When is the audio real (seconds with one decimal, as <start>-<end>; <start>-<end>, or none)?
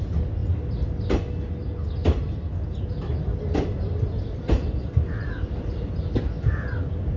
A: 0.0-2.0; 5.9-7.2